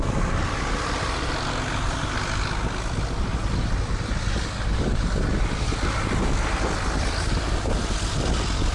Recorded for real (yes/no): yes